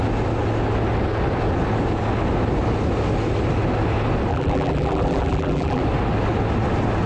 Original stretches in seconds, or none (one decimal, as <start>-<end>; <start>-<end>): 0.0-4.3; 5.8-7.1